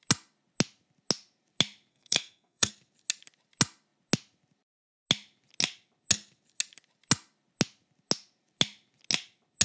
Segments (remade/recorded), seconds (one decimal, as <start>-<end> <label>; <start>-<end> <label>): 0.0-1.9 recorded; 1.9-2.7 remade; 2.7-9.6 recorded